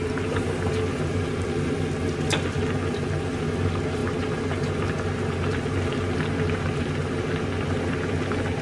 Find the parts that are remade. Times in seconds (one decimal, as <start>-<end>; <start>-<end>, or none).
none